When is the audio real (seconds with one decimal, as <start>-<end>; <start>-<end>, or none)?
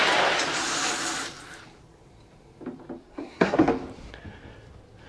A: 0.0-3.0; 3.7-5.1